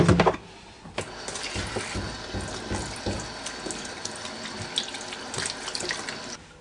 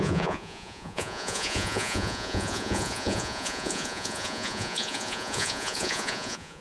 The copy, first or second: second